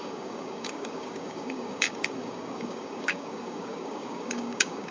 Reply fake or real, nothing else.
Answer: fake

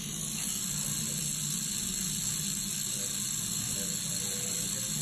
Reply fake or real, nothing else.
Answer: real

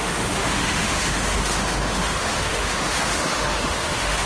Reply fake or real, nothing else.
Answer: fake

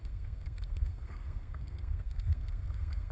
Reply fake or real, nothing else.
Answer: fake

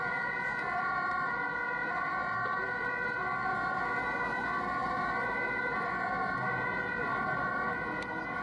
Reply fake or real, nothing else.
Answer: real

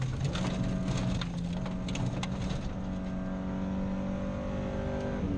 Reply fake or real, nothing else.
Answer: real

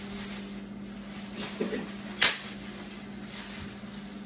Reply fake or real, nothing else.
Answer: real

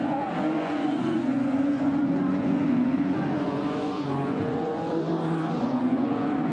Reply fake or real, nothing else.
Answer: fake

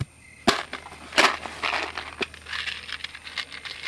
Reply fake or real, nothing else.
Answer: real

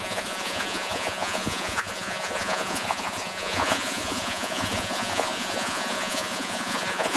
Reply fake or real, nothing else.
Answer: fake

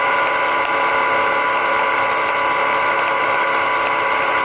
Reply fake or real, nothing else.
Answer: real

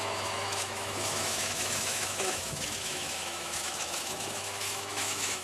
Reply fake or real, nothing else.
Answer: fake